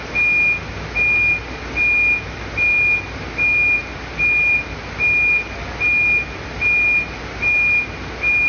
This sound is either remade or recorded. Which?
recorded